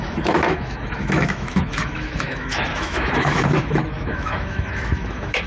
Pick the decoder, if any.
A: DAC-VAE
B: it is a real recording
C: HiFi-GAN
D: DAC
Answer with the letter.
A